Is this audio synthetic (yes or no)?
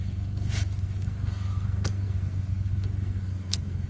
yes